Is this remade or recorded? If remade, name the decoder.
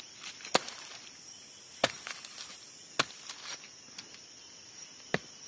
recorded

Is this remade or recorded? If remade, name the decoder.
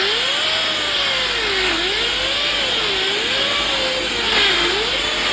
recorded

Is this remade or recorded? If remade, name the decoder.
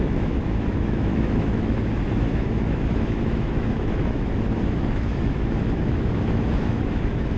remade, autoencoder, DAC-VAE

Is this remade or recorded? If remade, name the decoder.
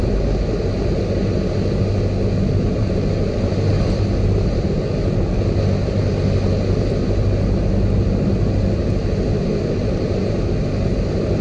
recorded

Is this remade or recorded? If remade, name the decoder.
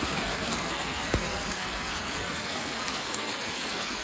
remade, codec, SNAC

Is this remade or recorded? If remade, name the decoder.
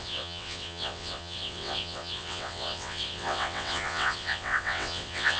remade, vocoder, WaveNeXt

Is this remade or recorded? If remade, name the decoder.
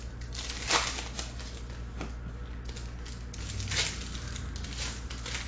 recorded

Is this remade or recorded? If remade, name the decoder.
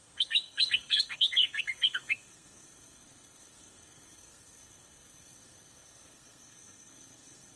remade, codec, SNAC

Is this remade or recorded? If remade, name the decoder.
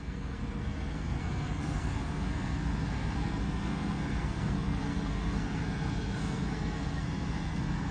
remade, codec, SNAC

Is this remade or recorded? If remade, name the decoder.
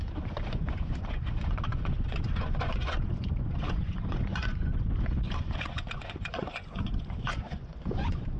remade, vocoder, Vocos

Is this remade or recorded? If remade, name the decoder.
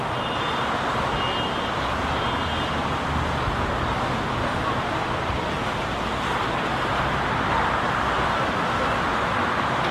recorded